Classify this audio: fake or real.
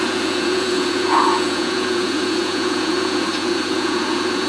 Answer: fake